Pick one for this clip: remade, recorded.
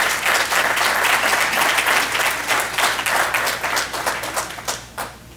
remade